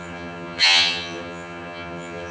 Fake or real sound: fake